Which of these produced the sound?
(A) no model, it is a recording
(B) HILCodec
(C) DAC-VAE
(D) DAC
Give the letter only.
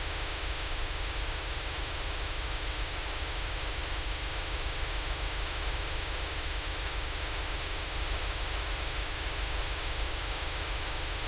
C